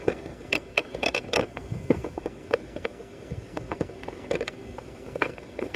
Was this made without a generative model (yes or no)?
no